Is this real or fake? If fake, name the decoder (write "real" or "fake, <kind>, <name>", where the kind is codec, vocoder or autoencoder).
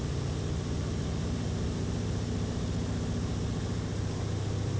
real